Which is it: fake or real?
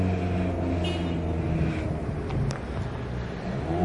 real